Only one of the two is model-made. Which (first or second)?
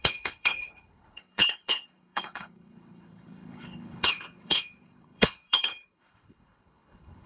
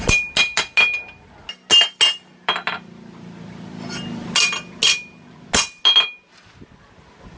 first